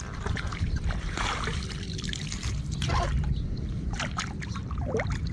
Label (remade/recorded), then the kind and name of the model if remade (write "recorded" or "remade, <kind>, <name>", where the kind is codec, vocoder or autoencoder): recorded